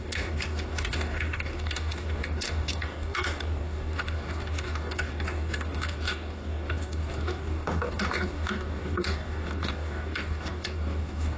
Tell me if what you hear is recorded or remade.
remade